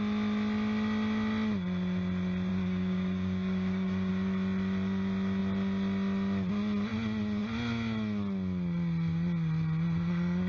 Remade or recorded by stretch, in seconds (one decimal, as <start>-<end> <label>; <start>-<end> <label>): 0.0-2.5 recorded; 2.5-4.1 remade; 4.1-10.5 recorded